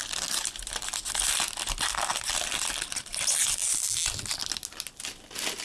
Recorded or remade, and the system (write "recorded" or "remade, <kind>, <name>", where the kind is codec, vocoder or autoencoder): recorded